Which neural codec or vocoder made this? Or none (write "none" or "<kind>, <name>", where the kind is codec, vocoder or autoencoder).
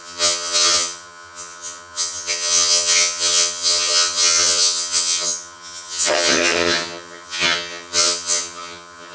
vocoder, HiFi-GAN